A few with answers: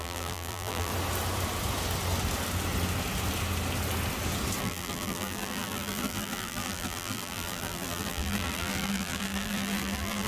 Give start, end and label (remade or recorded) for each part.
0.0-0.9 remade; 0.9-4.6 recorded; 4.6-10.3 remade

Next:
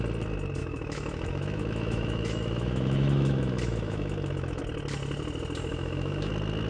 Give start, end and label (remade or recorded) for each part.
0.0-0.6 recorded; 0.6-4.6 remade; 4.6-5.7 recorded; 5.7-6.3 remade; 6.3-6.7 recorded

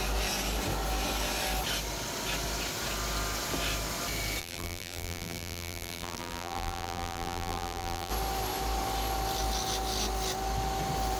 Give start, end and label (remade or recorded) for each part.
0.0-4.4 recorded; 4.4-8.1 remade; 8.1-11.2 recorded

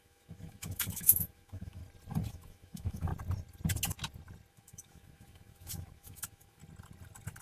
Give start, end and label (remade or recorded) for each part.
0.0-1.8 remade; 1.8-2.3 recorded; 2.3-3.1 remade; 3.1-4.5 recorded; 4.5-6.6 remade; 6.6-7.4 recorded

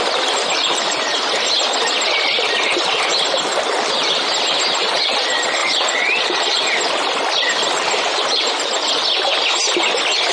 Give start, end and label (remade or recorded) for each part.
0.0-5.6 recorded; 5.6-6.6 remade; 6.6-10.3 recorded

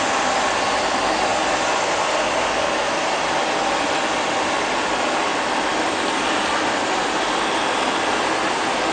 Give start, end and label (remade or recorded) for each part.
0.0-8.9 recorded